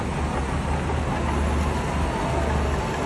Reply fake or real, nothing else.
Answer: real